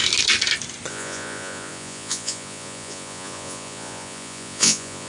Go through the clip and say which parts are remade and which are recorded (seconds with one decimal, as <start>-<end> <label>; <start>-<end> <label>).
0.0-0.9 recorded; 0.9-5.1 remade

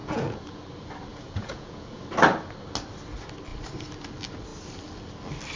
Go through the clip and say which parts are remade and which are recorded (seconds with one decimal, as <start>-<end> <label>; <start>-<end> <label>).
0.0-0.6 remade; 0.6-1.1 recorded; 1.1-2.0 remade; 2.0-5.6 recorded

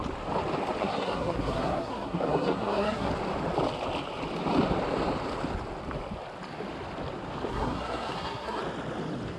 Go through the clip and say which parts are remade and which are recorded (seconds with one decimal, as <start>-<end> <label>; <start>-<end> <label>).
0.0-0.8 recorded; 0.8-3.1 remade; 3.1-7.5 recorded; 7.5-8.6 remade; 8.6-9.4 recorded

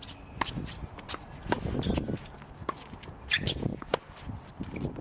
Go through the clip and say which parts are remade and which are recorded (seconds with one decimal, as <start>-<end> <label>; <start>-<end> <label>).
0.0-5.0 recorded

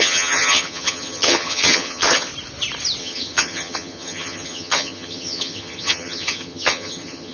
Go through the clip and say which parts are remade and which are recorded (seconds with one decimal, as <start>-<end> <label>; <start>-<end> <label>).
0.0-2.3 remade; 2.3-3.0 recorded; 3.0-7.3 remade

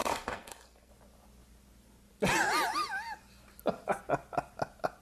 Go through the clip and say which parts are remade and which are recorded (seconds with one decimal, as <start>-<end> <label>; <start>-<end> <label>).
0.0-0.9 remade; 0.9-5.0 recorded

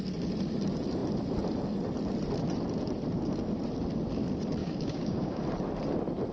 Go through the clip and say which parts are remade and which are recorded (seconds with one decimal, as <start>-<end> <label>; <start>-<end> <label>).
0.0-4.6 recorded; 4.6-5.4 remade; 5.4-6.3 recorded